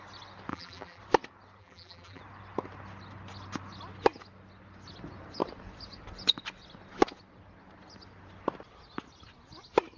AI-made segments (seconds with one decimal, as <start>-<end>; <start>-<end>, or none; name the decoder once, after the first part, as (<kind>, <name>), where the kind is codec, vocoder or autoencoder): 0.5-1.0 (vocoder, BigVGAN v2); 1.6-2.2